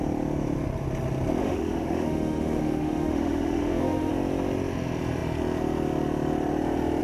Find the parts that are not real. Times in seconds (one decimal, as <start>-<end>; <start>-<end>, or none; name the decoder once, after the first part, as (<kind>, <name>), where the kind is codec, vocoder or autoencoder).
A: 1.4-4.1 (autoencoder, DAC-VAE)